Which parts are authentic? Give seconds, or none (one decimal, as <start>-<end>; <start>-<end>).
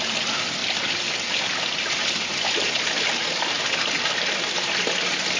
0.0-5.4